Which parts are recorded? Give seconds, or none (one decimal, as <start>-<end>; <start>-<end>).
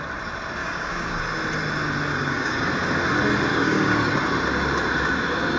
0.0-0.6; 1.2-2.1; 2.7-3.5; 4.1-5.6